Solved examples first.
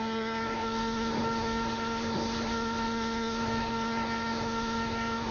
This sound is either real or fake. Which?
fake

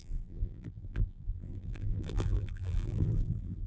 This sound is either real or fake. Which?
fake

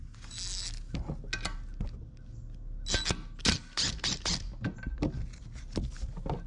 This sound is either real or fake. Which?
real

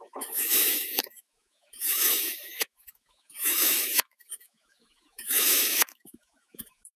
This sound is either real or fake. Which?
fake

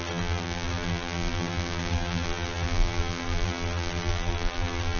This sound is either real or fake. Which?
fake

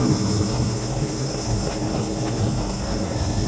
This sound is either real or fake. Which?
fake